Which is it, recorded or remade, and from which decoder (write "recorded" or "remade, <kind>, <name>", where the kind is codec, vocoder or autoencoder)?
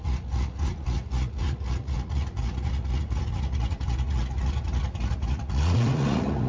remade, vocoder, Vocos